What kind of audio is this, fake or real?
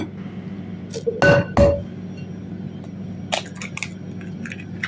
real